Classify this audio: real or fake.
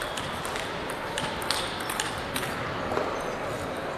real